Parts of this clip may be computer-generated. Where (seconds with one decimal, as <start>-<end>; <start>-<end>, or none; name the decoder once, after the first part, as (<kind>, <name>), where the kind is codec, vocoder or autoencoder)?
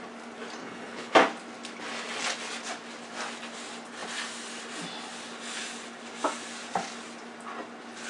0.6-1.1 (codec, HILCodec)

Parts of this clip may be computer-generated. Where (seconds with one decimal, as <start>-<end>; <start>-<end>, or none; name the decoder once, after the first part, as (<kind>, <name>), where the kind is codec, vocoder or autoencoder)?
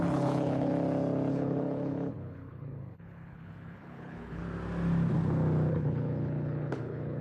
0.0-0.7 (codec, HILCodec); 1.3-4.4; 5.7-7.2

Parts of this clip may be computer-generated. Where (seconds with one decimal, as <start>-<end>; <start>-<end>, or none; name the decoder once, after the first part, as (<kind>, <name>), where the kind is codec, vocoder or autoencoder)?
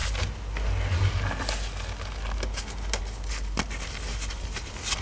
none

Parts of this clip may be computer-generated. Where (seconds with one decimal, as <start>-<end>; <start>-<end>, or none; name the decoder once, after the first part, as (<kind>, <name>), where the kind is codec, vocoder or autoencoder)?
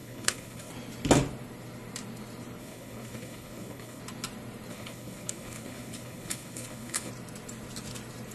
0.0-0.7 (codec, HILCodec); 2.6-4.0; 4.7-7.1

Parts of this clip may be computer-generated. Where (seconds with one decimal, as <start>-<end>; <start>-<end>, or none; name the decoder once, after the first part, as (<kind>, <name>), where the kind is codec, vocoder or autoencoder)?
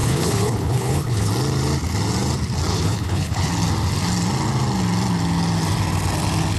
0.0-1.3 (codec, HILCodec); 2.7-3.5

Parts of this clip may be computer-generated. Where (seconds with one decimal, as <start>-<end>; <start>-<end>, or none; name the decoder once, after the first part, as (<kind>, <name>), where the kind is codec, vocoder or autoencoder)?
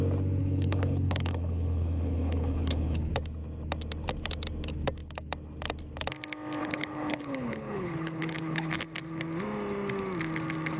0.4-3.1 (codec, HILCodec); 6.6-8.8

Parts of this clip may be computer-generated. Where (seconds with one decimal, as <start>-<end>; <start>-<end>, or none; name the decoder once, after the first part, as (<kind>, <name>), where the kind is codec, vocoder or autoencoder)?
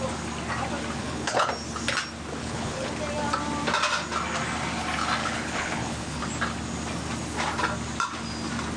1.0-1.5 (codec, HILCodec); 2.4-2.9; 5.2-6.2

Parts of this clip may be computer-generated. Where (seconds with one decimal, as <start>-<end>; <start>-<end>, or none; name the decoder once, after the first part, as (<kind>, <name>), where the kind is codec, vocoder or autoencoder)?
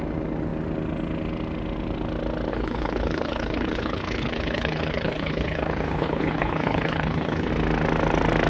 2.5-7.5 (codec, HILCodec)